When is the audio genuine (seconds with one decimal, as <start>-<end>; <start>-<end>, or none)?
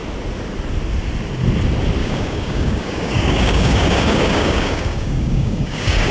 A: 0.0-2.0